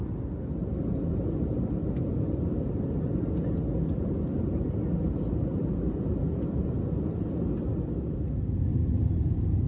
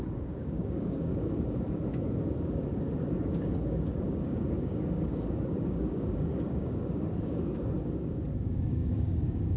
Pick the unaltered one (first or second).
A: first